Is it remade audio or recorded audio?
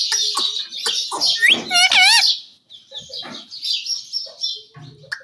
recorded